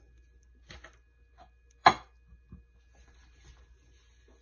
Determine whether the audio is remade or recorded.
recorded